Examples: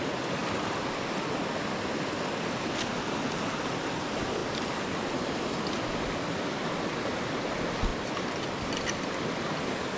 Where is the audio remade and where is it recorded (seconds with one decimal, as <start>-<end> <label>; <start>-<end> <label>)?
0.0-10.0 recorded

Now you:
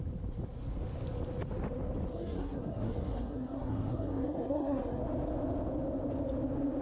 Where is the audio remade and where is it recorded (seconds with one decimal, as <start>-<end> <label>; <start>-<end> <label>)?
0.0-2.1 recorded; 2.1-5.0 remade; 5.0-6.8 recorded

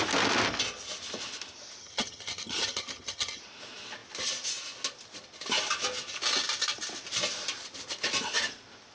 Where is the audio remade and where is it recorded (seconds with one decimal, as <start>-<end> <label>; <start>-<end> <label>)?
0.0-1.8 recorded; 1.8-3.4 remade; 3.4-8.9 recorded

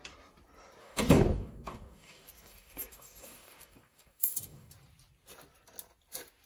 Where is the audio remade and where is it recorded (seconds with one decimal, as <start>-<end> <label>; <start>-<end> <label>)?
0.0-0.8 recorded; 0.8-4.7 remade; 4.7-6.5 recorded

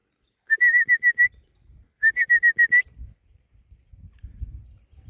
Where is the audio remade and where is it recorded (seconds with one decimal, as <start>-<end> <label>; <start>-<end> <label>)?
0.0-5.1 recorded